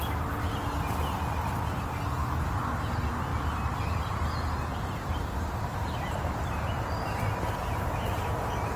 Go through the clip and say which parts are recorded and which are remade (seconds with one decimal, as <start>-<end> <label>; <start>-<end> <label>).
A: 0.0-8.8 recorded